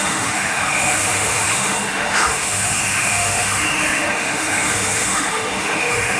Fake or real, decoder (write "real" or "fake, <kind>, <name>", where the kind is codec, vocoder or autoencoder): fake, autoencoder, DAC-VAE